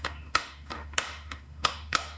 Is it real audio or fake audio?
fake